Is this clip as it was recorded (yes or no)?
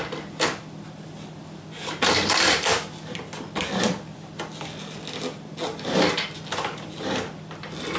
yes